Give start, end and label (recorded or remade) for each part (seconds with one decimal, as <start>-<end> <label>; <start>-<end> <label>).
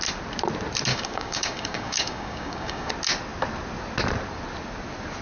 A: 0.0-0.9 recorded; 0.9-2.9 remade; 2.9-5.2 recorded